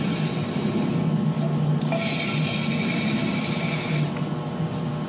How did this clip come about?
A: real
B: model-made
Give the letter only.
A